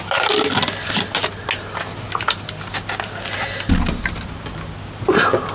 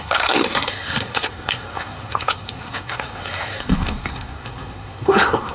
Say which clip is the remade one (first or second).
second